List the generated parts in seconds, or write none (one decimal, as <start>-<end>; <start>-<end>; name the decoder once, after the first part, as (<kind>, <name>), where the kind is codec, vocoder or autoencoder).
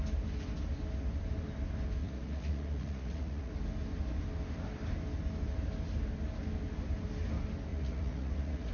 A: 2.0-3.5 (vocoder, Vocos); 7.7-8.7